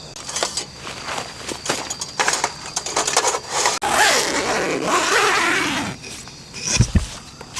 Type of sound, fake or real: real